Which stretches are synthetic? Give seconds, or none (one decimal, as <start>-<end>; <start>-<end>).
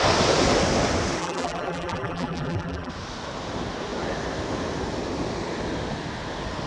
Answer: 1.2-2.9